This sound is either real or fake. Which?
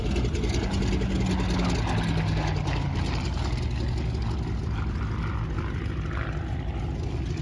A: real